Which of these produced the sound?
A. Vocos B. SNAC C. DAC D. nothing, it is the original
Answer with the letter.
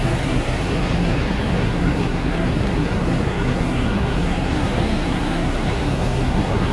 B